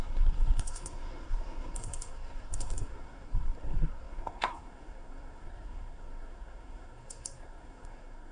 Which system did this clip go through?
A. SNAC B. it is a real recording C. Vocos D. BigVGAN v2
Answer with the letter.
A